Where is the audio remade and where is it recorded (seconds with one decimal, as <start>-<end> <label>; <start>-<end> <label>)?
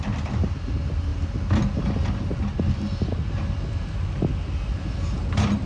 0.0-5.7 recorded